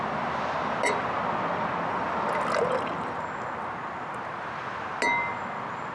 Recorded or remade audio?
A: recorded